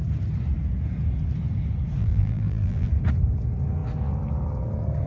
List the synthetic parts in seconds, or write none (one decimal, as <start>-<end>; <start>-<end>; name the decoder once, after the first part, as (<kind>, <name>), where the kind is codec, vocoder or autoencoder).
2.0-2.9 (vocoder, BigVGAN v2)